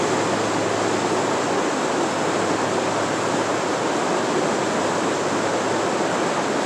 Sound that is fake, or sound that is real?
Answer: real